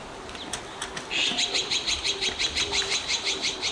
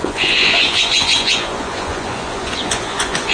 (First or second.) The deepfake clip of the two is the second